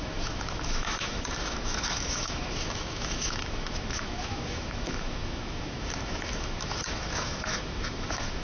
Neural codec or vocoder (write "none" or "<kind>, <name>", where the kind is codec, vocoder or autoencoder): autoencoder, DAC-VAE